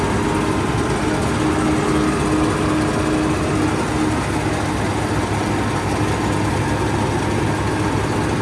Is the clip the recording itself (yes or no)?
yes